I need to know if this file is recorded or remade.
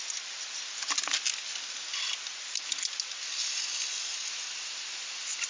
recorded